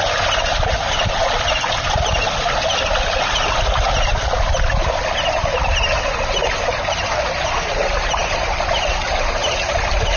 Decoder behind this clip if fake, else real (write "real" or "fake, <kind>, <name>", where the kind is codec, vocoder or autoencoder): real